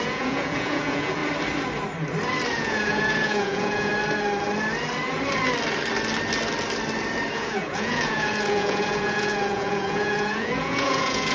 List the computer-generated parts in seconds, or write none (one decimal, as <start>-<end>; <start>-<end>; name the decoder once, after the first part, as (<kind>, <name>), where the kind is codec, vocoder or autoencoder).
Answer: 0.0-1.2 (vocoder, Vocos); 2.5-3.9; 7.3-11.3

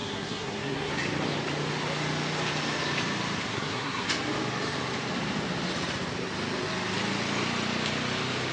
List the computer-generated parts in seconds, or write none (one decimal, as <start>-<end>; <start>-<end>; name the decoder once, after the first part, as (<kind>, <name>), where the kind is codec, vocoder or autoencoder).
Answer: 0.0-0.9 (codec, SNAC); 3.5-4.1

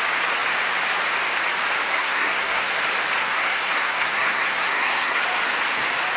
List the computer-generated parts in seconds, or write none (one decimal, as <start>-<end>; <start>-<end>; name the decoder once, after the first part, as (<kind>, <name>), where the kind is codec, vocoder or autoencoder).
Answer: 1.9-2.8 (codec, SNAC); 3.2-5.2

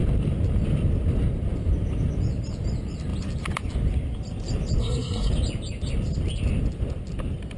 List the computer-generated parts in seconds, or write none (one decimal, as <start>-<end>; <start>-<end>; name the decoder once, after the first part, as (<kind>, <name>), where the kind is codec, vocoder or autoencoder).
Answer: 4.8-5.3 (codec, SNAC)

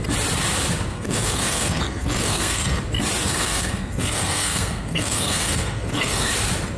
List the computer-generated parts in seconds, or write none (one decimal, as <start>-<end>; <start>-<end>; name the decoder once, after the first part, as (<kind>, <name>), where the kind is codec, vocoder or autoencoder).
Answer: 0.9-2.8 (codec, SNAC); 3.2-6.3